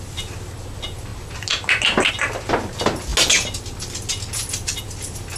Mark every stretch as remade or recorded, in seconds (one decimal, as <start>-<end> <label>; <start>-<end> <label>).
0.0-5.4 recorded